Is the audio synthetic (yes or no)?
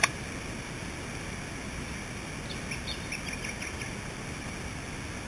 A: no